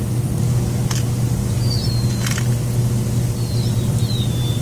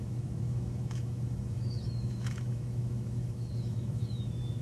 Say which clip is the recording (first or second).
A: first